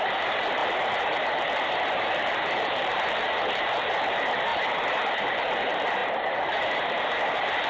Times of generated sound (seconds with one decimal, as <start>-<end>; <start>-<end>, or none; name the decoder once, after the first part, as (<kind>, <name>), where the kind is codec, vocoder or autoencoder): none